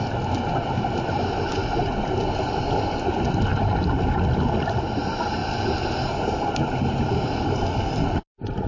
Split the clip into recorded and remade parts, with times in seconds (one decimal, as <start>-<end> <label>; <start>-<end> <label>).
0.0-8.7 recorded